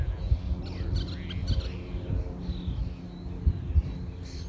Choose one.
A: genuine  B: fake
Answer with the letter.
A